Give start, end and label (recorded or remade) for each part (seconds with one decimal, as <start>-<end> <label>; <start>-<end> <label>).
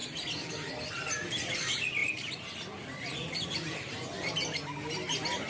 0.0-5.5 recorded